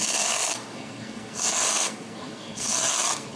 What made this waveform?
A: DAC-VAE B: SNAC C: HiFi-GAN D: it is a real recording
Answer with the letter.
B